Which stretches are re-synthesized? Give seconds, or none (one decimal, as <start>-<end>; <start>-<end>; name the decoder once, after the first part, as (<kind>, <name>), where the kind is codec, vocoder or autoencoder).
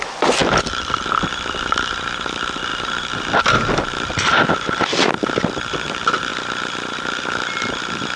0.0-2.7 (vocoder, BigVGAN v2); 4.5-6.3